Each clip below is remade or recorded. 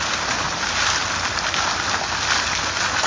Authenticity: recorded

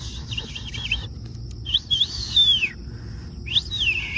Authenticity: recorded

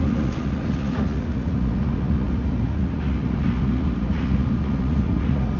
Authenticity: remade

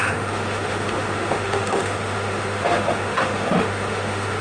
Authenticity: remade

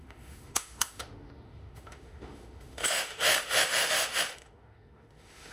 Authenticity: remade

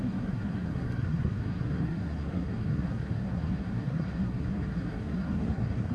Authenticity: remade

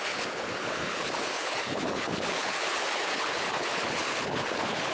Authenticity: remade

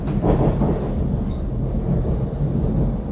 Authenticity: recorded